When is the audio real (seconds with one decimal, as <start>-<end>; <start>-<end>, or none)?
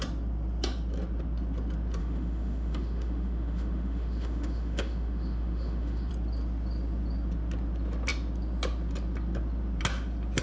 0.0-2.0; 6.1-10.4